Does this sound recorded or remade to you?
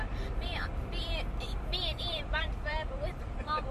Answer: remade